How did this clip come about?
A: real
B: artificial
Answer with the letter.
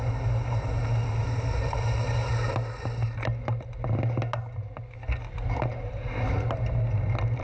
A